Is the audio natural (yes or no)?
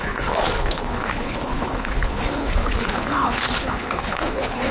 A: no